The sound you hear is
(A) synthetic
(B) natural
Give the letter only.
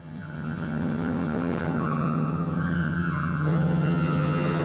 A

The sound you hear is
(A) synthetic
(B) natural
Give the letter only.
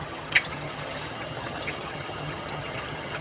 A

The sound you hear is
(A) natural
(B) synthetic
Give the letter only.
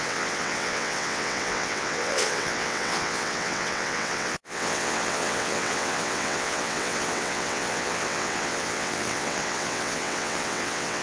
B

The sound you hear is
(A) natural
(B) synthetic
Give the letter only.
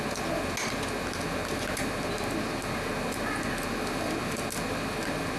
A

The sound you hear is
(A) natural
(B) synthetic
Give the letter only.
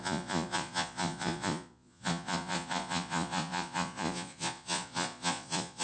B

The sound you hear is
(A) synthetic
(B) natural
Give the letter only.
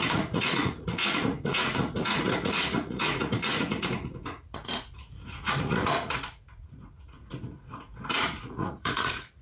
A